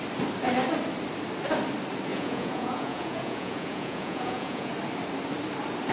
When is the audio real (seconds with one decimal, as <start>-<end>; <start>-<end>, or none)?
0.0-2.1; 4.7-5.9